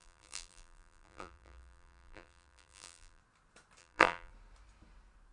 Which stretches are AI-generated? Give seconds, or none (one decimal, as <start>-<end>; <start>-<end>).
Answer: 0.0-3.2; 3.8-4.3